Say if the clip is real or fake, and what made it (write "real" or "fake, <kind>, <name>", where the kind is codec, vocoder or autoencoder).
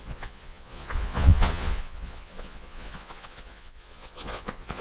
fake, vocoder, Vocos